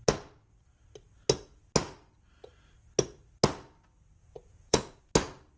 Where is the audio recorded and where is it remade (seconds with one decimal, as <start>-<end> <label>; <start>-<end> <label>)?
0.0-4.2 recorded; 4.2-5.0 remade; 5.0-5.6 recorded